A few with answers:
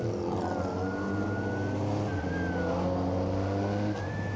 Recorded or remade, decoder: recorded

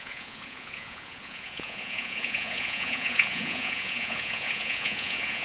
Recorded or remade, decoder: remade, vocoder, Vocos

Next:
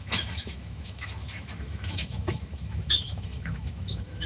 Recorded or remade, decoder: remade, autoencoder, DAC-VAE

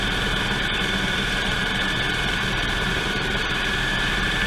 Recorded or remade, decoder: remade, vocoder, BigVGAN v2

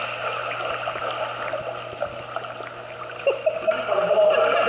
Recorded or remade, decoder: recorded